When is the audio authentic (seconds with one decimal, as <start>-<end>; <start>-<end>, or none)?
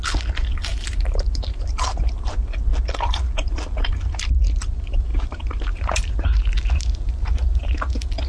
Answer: 0.0-0.7; 1.7-5.1; 7.1-8.3